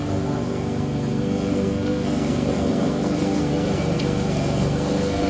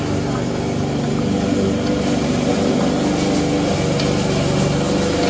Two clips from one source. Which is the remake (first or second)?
first